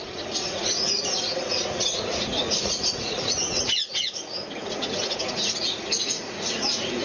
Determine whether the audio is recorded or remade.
remade